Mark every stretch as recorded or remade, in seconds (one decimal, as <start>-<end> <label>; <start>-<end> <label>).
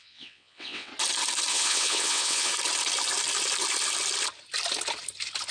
0.0-0.9 remade; 0.9-1.5 recorded; 1.5-2.5 remade; 2.5-5.5 recorded